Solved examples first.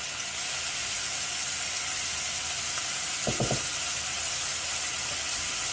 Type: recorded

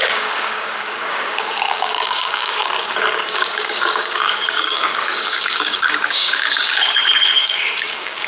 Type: remade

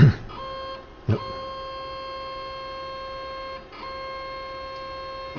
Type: recorded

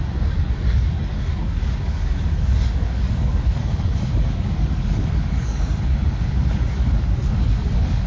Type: remade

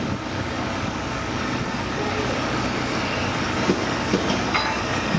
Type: remade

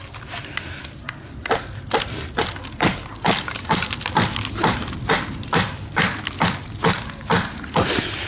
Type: recorded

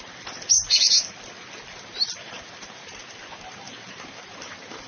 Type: recorded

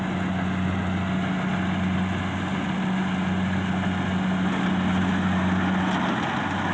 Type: recorded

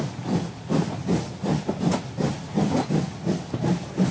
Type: recorded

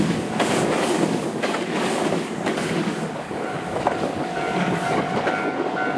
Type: remade